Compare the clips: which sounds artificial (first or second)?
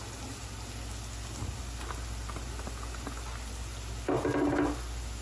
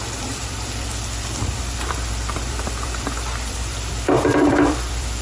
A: second